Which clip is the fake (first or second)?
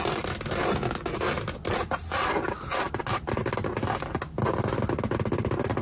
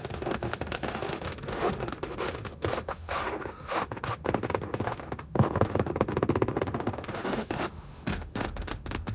second